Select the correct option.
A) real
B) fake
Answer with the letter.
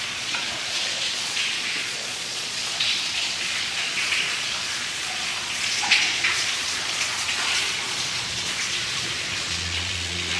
B